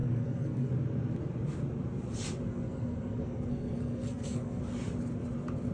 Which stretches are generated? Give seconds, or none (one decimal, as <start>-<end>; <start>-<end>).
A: 0.0-0.7; 2.5-4.6